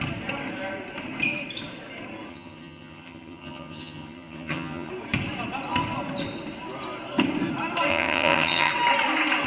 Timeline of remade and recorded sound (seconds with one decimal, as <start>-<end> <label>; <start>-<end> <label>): 0.0-2.3 recorded; 2.3-4.9 remade; 4.9-7.9 recorded; 7.9-8.7 remade; 8.7-9.5 recorded